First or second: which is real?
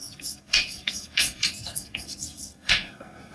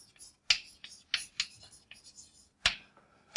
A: second